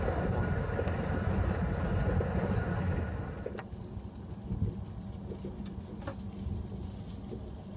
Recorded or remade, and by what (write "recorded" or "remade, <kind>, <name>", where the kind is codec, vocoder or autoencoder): recorded